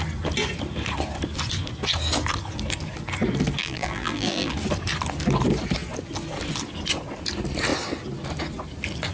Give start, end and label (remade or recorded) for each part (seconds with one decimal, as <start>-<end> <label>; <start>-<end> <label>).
0.0-3.6 recorded; 3.6-4.5 remade; 4.5-9.1 recorded